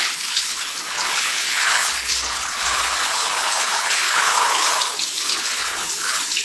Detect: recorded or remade remade